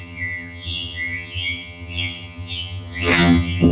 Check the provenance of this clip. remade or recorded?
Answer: remade